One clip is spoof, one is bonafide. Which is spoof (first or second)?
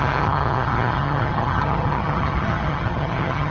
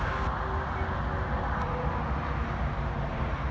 first